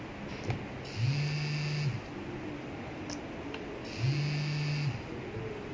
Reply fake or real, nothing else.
real